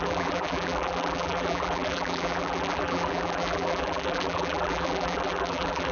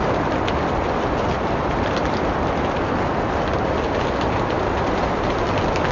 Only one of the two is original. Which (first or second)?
second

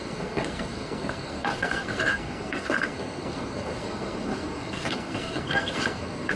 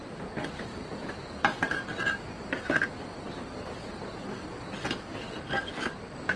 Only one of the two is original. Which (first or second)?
second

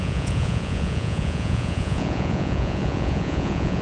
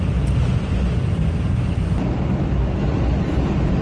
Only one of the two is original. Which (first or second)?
second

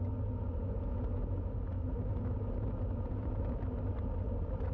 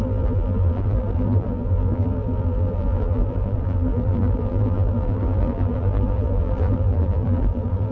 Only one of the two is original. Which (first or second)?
first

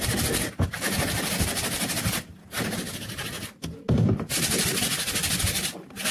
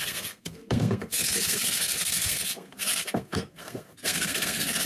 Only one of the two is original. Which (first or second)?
first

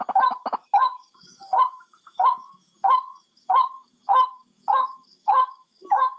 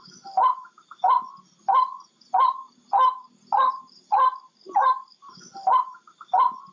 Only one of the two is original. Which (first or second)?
second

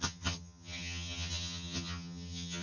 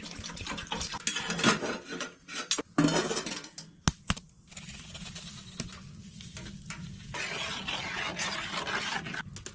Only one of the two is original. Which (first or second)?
second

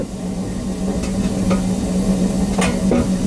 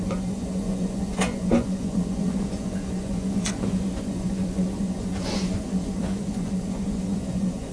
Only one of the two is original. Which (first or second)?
first